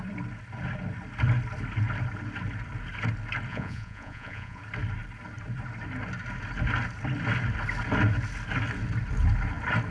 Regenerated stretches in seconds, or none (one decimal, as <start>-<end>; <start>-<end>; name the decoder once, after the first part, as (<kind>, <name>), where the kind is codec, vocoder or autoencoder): 3.5-4.6 (vocoder, Vocos)